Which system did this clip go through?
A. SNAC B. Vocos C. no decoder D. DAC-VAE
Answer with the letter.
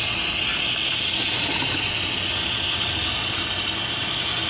C